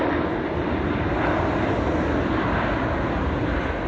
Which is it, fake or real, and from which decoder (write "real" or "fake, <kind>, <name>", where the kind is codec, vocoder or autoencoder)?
real